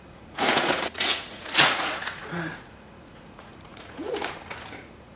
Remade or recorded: remade